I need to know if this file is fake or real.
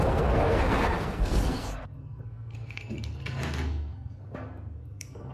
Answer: fake